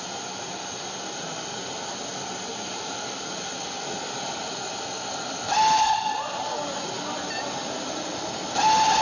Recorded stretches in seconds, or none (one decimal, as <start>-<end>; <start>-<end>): 0.0-9.0